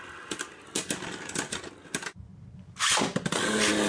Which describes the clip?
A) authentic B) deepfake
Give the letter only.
A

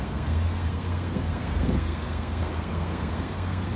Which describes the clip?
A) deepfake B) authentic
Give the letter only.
A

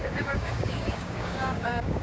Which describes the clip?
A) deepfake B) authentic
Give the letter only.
A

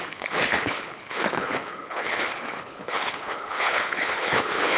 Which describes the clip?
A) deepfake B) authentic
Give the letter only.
A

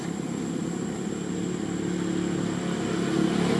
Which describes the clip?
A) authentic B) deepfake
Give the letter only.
A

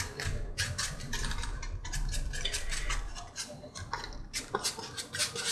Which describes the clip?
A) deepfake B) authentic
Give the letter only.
A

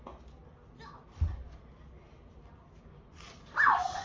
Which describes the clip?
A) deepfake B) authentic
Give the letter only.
B